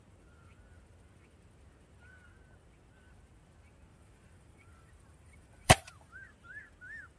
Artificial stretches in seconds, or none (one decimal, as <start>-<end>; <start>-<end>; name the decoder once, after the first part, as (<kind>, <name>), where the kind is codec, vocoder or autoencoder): 3.9-6.1 (vocoder, BigVGAN v2)